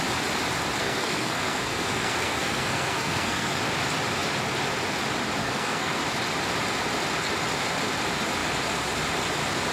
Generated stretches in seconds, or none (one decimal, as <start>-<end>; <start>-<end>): 0.8-3.6; 5.4-6.0